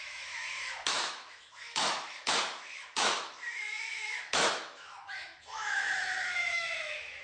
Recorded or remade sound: remade